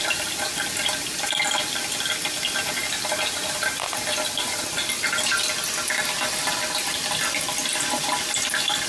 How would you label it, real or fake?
real